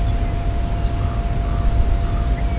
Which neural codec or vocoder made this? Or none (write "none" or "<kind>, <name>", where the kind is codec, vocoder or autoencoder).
none